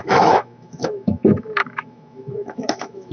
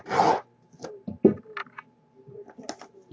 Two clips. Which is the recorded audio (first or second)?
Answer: second